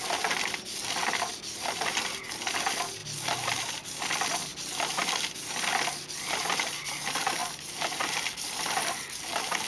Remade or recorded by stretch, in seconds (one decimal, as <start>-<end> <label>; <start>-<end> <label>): 0.0-4.5 recorded; 4.5-5.5 remade; 5.5-9.7 recorded